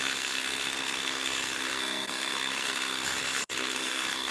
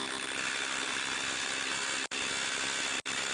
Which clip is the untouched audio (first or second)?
second